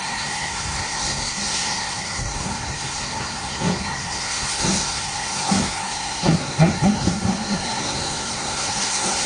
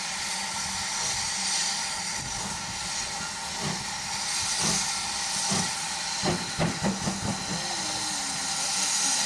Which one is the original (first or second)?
second